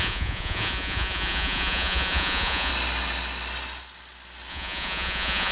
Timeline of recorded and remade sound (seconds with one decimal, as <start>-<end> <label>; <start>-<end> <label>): 0.0-2.7 remade; 2.7-4.5 recorded; 4.5-5.5 remade

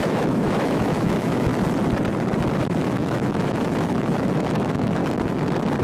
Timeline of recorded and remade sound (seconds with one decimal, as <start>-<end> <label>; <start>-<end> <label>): 0.0-1.5 remade; 1.5-2.8 recorded; 2.8-5.0 remade; 5.0-5.8 recorded

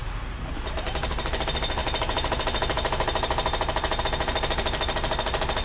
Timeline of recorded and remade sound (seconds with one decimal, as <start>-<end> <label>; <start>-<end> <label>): 0.0-0.5 remade; 0.5-5.6 recorded

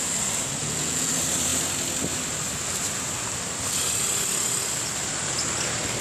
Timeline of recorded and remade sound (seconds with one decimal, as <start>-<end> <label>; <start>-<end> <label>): 0.0-0.6 recorded; 0.6-1.1 remade; 1.1-6.0 recorded

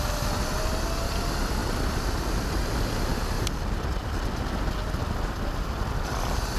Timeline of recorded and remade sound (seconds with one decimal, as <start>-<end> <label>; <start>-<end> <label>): 0.0-6.6 recorded

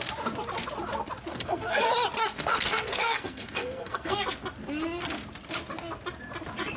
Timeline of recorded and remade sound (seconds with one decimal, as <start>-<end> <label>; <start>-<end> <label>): 0.0-1.3 recorded; 1.3-1.9 remade; 1.9-2.5 recorded; 2.5-4.2 remade; 4.2-6.8 recorded

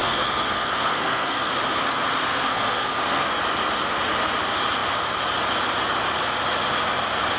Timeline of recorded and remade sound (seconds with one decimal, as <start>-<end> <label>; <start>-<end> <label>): 0.0-1.5 remade; 1.5-2.2 recorded; 2.2-3.4 remade; 3.4-7.4 recorded

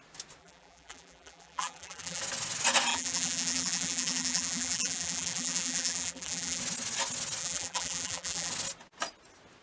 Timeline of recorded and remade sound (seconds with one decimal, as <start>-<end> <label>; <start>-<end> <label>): 0.0-0.4 recorded; 0.4-2.2 remade; 2.2-2.9 recorded; 2.9-6.6 remade; 6.6-7.4 recorded; 7.4-8.5 remade; 8.5-9.6 recorded